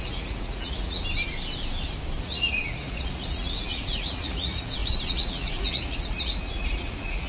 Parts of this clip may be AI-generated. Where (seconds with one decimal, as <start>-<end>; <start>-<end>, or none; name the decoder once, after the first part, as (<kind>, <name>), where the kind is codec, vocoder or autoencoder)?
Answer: 0.0-1.0 (vocoder, Vocos); 2.2-7.3